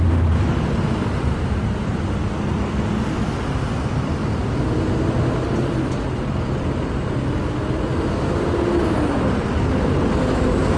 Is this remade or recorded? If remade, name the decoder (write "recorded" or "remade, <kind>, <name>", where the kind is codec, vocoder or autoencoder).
recorded